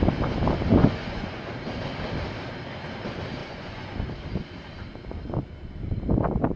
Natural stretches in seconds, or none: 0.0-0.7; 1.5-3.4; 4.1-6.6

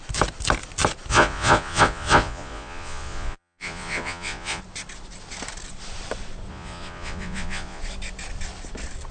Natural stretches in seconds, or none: 0.0-1.1; 4.6-6.5; 7.8-9.1